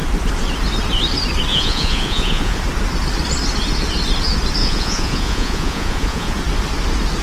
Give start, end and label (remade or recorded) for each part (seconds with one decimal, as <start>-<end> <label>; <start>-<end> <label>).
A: 0.0-1.5 recorded; 1.5-2.6 remade; 2.6-4.6 recorded; 4.6-6.3 remade; 6.3-7.2 recorded